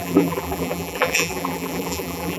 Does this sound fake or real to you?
fake